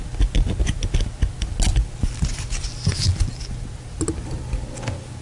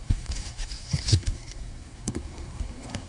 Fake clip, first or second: second